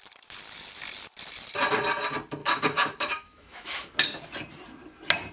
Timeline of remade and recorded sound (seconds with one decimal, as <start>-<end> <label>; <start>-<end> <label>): 0.0-2.4 recorded; 2.4-3.9 remade; 3.9-5.3 recorded